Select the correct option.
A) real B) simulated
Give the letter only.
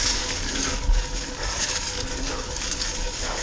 B